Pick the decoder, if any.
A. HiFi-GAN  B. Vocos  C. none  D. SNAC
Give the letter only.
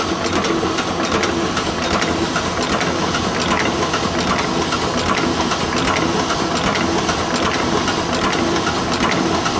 C